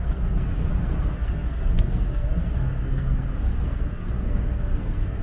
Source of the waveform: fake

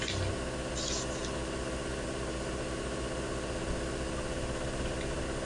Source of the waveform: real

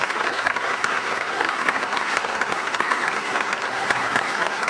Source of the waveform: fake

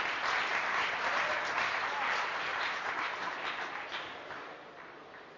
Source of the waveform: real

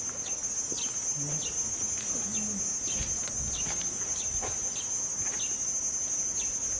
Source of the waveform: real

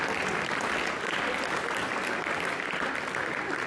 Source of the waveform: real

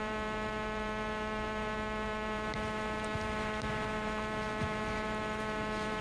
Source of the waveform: fake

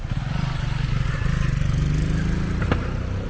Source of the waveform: real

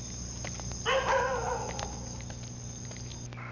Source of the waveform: real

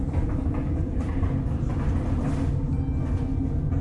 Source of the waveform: real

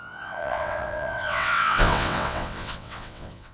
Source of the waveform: fake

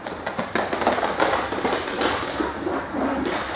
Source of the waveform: real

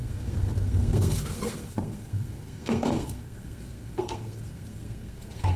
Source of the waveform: fake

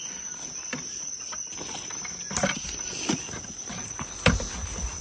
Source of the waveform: real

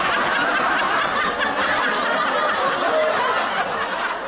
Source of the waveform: real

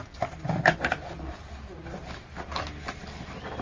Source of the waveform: real